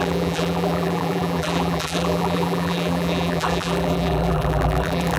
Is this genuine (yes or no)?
no